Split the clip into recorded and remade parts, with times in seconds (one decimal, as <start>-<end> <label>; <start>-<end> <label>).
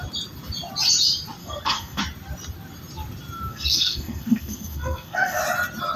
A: 0.0-1.4 recorded; 1.4-2.0 remade; 2.0-3.5 recorded; 3.5-5.4 remade; 5.4-6.0 recorded